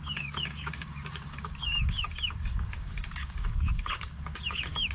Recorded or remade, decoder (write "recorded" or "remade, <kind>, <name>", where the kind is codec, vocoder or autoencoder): remade, codec, DAC